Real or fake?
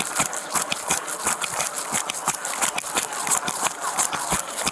real